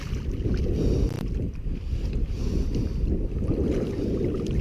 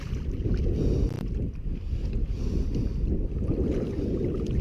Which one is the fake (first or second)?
first